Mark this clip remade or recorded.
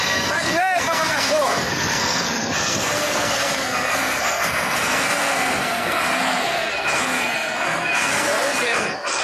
remade